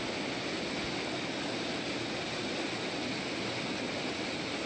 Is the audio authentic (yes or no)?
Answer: yes